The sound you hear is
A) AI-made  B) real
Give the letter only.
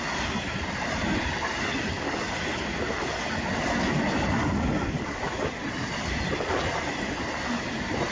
B